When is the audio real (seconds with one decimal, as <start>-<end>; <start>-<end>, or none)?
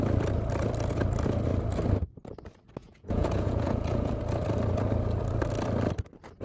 0.0-2.8; 4.2-6.4